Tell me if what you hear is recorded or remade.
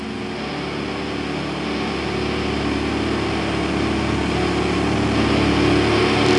recorded